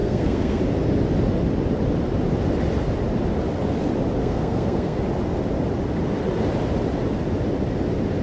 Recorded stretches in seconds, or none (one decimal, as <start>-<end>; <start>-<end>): 0.6-4.2; 5.0-8.2